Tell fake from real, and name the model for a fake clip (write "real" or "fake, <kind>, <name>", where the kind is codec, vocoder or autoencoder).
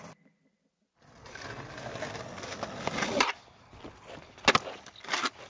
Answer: real